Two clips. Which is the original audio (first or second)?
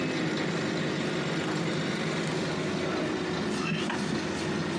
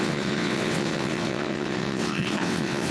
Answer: first